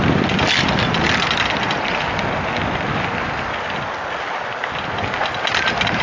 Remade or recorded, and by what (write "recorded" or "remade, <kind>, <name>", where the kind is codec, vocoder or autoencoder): recorded